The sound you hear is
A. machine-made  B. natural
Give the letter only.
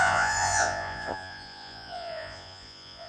A